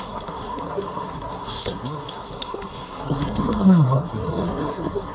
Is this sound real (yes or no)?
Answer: no